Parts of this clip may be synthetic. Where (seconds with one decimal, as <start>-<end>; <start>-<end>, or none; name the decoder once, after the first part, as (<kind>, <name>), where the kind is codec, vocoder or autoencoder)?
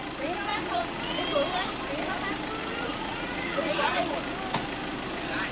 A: 0.5-1.2 (vocoder, Vocos); 2.6-4.2